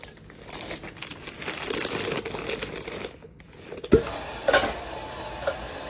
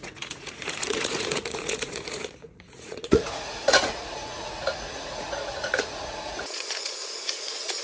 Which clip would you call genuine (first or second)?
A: first